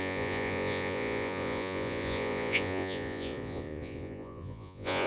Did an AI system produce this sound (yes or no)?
yes